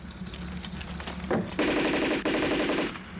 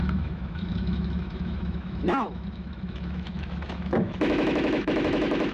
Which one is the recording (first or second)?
first